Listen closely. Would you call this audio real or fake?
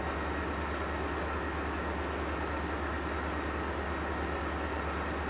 real